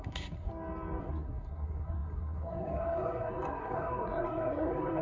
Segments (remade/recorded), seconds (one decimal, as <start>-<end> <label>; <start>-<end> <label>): 0.0-0.5 remade; 0.5-1.0 recorded; 1.0-5.0 remade